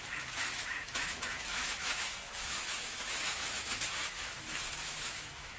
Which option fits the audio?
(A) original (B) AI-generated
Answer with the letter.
B